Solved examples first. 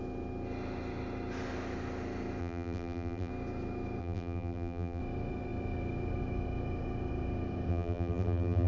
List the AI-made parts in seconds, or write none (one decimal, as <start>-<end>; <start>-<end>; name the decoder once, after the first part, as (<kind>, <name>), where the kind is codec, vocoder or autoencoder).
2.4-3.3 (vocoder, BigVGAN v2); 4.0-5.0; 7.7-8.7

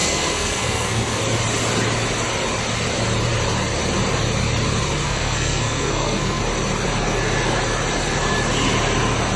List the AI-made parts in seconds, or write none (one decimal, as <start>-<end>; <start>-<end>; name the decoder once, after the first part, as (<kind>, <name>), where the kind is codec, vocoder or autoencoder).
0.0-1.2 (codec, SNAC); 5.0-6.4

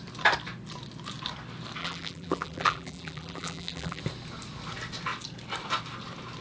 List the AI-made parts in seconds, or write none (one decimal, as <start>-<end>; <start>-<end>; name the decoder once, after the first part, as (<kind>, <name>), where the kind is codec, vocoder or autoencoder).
1.8-4.0 (vocoder, BigVGAN v2)